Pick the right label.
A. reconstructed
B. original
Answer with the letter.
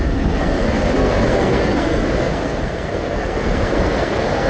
A